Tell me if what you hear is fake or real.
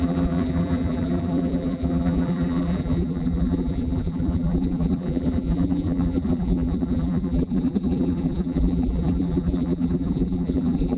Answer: fake